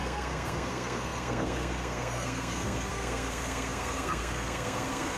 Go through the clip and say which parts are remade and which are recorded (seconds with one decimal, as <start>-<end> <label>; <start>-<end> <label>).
0.0-5.2 remade